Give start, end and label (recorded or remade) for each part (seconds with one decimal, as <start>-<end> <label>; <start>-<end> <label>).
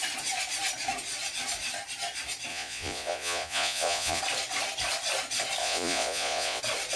0.0-2.5 recorded; 2.5-4.2 remade; 4.2-5.6 recorded; 5.6-6.6 remade; 6.6-7.0 recorded